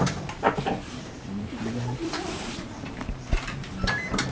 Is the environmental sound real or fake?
fake